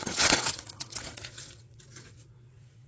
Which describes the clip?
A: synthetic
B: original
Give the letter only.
A